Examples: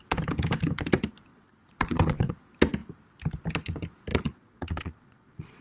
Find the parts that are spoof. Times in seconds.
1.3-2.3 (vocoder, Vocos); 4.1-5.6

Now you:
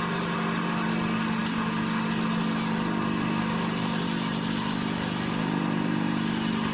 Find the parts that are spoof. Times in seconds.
none

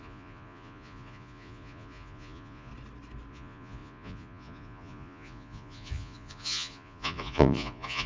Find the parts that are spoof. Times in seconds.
0.0-2.7 (vocoder, Vocos); 3.3-8.1

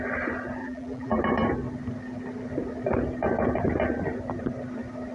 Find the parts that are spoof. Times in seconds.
0.6-1.2 (vocoder, BigVGAN v2)